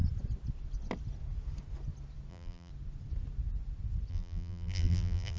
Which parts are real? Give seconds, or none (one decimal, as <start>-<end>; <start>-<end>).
0.0-2.3; 2.7-4.1